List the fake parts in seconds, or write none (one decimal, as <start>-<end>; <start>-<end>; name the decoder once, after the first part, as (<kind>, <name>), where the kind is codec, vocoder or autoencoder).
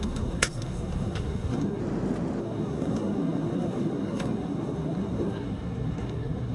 0.0-1.8 (codec, SNAC); 2.4-6.5